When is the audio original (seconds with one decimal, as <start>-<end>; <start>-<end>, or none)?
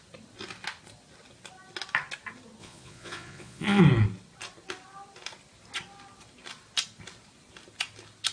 0.0-2.6; 3.8-8.3